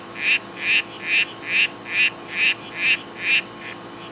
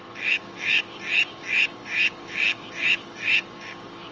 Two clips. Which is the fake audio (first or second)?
second